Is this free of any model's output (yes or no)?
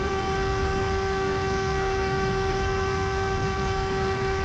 no